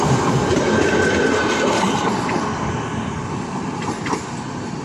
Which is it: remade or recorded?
recorded